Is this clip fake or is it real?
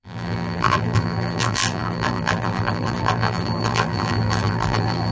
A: fake